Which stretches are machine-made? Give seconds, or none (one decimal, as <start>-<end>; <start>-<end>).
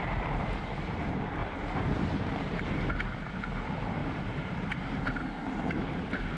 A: 1.4-2.9; 4.0-5.0